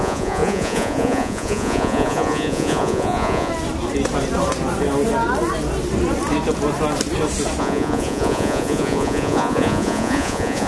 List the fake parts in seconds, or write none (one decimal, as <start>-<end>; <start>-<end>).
0.0-3.5; 7.6-10.7